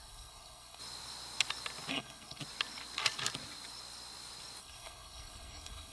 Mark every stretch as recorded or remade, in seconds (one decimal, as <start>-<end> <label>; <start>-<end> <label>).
0.0-0.8 remade; 0.8-1.9 recorded; 1.9-2.4 remade; 2.4-4.6 recorded; 4.6-5.9 remade